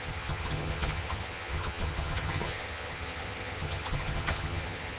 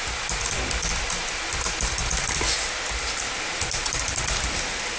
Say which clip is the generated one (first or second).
first